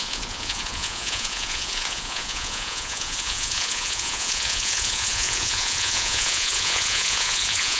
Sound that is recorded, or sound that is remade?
remade